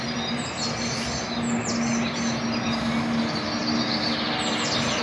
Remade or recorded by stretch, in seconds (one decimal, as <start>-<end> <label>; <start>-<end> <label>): 0.0-5.0 recorded